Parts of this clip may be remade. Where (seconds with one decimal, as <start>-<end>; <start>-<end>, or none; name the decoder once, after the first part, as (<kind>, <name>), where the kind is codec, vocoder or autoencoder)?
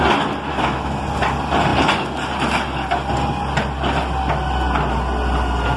0.5-1.0 (autoencoder, DAC-VAE)